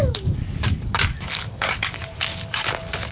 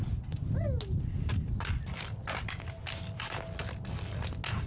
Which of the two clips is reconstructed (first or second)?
first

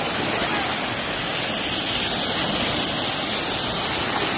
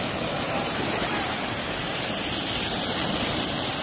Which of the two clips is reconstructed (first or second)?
second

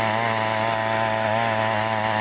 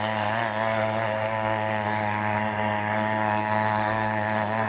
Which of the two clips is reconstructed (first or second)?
second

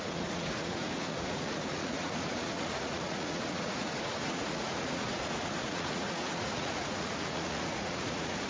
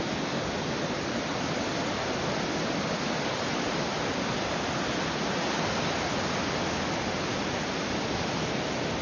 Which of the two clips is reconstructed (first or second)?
first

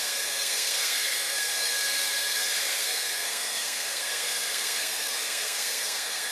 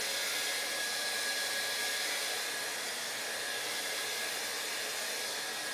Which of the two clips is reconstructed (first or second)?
first